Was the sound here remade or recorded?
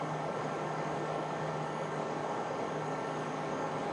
remade